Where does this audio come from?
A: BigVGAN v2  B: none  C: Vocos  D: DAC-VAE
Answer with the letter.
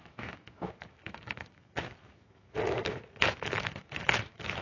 D